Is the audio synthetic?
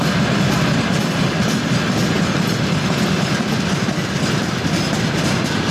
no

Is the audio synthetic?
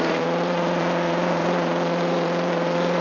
yes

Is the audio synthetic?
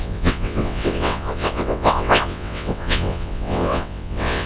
yes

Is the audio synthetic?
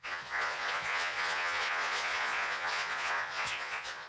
yes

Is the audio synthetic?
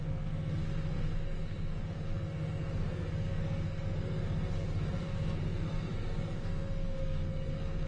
yes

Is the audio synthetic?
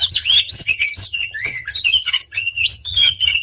yes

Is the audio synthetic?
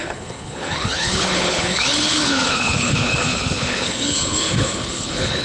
yes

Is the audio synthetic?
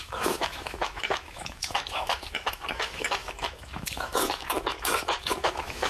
yes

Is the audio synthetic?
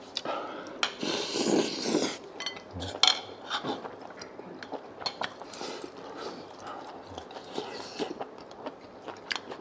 no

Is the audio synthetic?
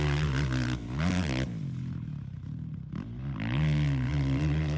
no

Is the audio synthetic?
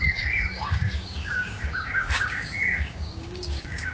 yes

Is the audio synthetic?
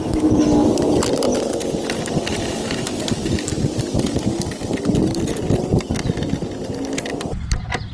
no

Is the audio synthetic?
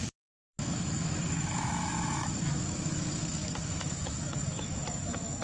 yes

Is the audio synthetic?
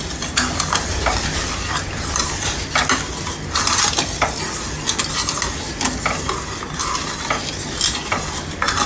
no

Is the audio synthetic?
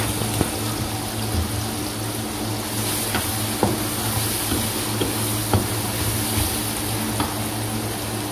no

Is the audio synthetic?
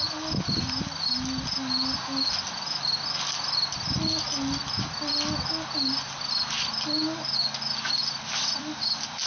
no